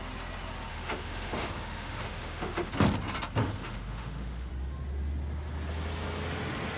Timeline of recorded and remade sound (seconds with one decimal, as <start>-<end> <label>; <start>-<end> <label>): 0.0-0.7 recorded; 0.7-2.7 remade; 2.7-3.4 recorded; 3.4-4.5 remade; 4.5-6.8 recorded